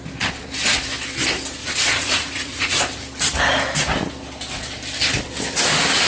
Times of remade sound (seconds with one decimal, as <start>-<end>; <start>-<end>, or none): 1.6-2.8